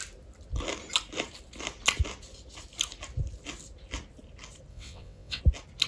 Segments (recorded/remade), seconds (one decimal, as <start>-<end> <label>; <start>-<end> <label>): 0.0-4.7 recorded; 4.7-5.4 remade; 5.4-5.9 recorded

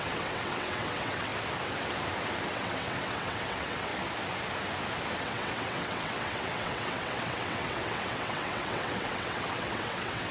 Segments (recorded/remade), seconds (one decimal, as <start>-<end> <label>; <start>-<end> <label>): 0.0-1.3 remade; 1.3-2.5 recorded; 2.5-3.9 remade; 3.9-5.2 recorded; 5.2-10.3 remade